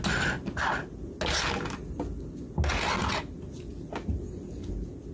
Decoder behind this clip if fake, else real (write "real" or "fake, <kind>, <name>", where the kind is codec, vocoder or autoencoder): real